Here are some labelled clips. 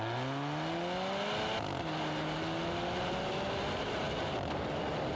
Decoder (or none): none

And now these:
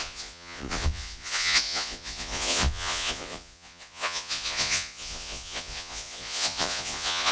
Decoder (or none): vocoder, Vocos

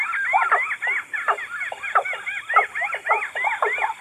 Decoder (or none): none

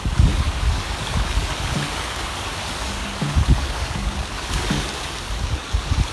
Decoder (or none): codec, DAC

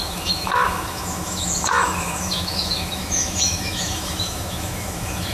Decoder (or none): autoencoder, DAC-VAE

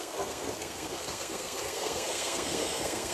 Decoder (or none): codec, SNAC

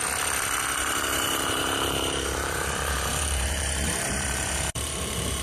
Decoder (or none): vocoder, BigVGAN v2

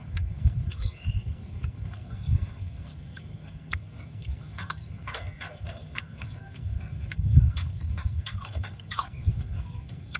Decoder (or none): codec, SNAC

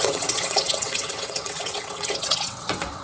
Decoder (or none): vocoder, WaveNeXt